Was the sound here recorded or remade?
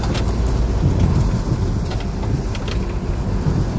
recorded